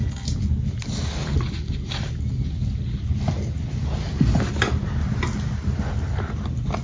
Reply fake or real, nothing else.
real